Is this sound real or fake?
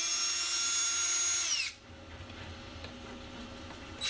real